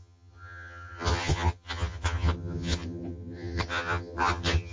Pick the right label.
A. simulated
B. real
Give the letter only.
A